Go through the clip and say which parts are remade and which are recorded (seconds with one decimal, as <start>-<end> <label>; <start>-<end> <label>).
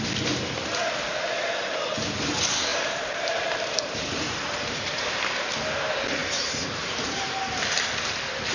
0.0-2.7 recorded; 2.7-5.2 remade; 5.2-6.2 recorded; 6.2-7.2 remade; 7.2-8.5 recorded